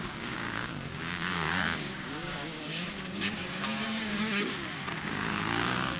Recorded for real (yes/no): no